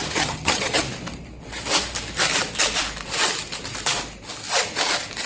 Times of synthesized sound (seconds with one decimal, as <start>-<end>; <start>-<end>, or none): 0.0-0.8